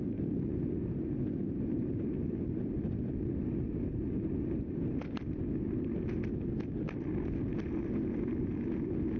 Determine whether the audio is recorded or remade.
recorded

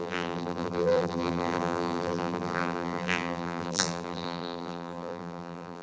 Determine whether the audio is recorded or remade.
remade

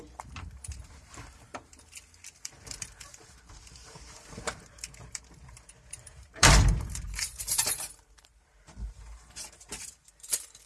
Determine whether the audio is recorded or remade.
remade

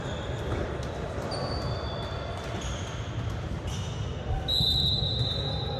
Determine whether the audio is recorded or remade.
recorded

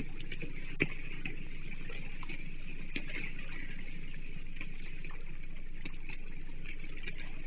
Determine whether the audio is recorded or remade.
recorded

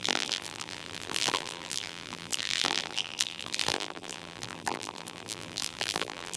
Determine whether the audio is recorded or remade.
remade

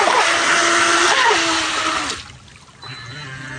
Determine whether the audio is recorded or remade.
recorded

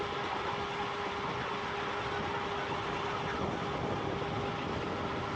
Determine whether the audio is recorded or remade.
recorded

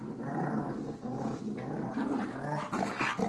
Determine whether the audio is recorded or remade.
recorded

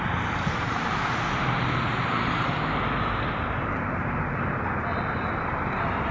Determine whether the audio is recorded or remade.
remade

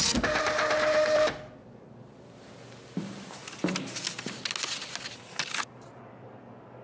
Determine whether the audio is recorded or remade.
recorded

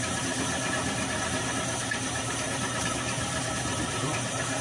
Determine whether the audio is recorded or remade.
remade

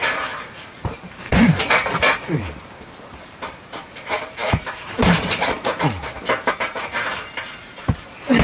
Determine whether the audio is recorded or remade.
remade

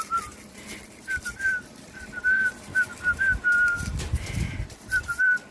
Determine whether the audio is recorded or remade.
remade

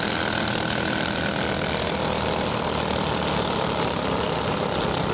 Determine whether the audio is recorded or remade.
recorded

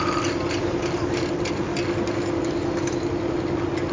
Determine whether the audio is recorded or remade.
recorded